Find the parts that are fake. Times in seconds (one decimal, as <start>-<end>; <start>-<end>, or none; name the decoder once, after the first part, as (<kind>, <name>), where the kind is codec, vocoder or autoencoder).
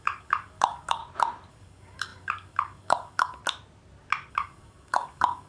0.0-1.0 (codec, DAC); 1.5-3.4; 4.3-5.5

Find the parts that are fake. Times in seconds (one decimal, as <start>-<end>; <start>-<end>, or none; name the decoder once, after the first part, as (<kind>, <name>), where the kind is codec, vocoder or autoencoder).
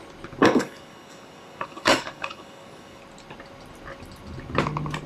0.4-3.0 (codec, DAC)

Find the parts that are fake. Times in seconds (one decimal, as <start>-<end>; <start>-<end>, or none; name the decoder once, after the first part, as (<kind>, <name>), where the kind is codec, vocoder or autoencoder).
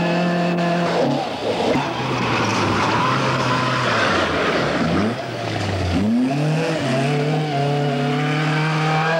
2.5-6.3 (codec, DAC)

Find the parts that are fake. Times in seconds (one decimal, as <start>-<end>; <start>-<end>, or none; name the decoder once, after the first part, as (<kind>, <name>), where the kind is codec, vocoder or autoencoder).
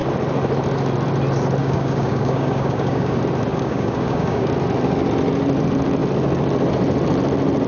1.6-3.1 (codec, DAC); 3.5-4.5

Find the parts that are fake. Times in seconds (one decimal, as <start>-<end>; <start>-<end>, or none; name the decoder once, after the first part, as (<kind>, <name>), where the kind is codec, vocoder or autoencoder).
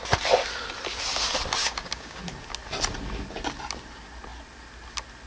1.6-2.2 (codec, DAC)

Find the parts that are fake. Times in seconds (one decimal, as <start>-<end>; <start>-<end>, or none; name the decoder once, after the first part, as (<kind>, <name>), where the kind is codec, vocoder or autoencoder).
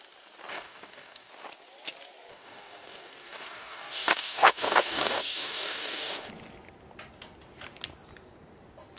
0.5-1.3 (codec, DAC); 2.3-6.3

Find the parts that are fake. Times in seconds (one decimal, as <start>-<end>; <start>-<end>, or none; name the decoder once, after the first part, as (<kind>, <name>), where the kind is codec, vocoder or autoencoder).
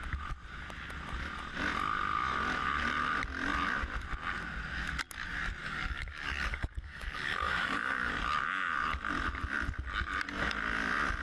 5.6-8.1 (codec, DAC)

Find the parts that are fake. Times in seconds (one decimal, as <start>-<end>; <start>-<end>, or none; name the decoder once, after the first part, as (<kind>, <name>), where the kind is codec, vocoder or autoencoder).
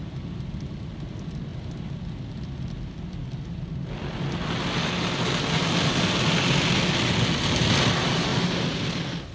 none